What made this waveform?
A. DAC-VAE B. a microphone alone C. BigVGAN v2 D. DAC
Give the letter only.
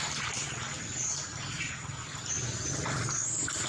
B